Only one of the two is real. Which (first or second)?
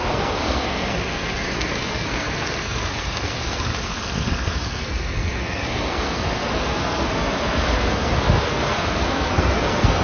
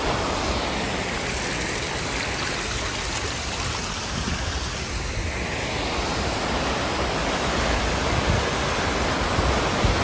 second